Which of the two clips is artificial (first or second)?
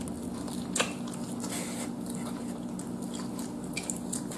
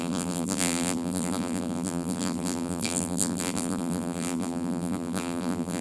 second